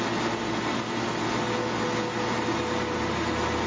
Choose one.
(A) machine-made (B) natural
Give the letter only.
B